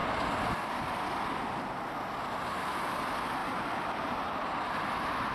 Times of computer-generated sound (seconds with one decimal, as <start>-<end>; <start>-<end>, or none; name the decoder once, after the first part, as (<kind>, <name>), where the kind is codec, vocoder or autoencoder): 3.4-4.7 (vocoder, BigVGAN v2)